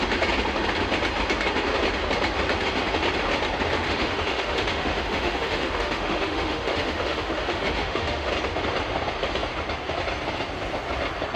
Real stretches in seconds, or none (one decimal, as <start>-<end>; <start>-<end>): 0.0-3.7; 8.3-11.4